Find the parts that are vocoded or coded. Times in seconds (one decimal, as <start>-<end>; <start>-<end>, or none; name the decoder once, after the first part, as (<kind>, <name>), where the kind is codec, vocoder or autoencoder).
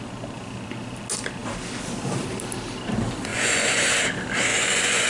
3.3-3.9 (vocoder, Vocos); 4.5-5.1